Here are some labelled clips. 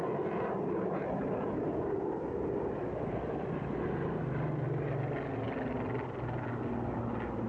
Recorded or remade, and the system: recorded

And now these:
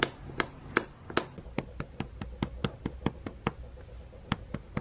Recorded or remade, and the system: recorded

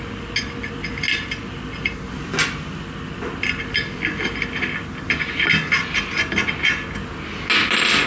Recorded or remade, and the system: recorded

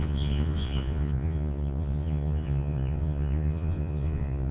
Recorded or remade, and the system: remade, vocoder, Vocos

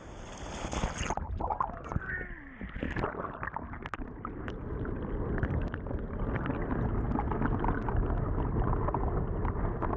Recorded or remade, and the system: recorded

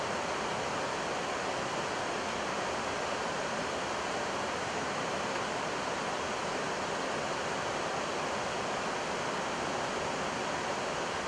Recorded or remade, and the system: recorded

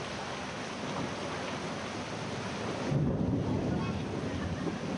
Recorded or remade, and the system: recorded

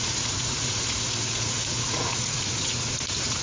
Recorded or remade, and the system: remade, vocoder, Vocos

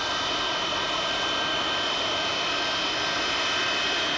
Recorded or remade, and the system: recorded